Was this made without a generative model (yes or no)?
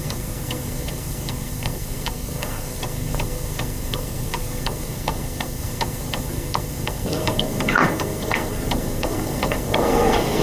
no